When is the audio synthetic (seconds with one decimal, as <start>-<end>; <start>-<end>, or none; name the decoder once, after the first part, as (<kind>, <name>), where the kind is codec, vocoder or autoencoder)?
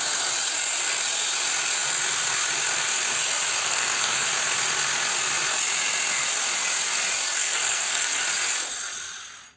3.6-4.3 (codec, SNAC); 7.4-8.2